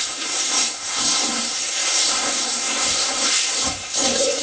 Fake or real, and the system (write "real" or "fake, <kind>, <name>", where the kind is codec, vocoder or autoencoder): fake, codec, SNAC